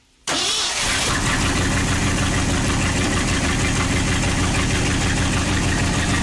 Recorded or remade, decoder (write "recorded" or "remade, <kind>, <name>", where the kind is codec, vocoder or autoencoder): remade, vocoder, BigVGAN v2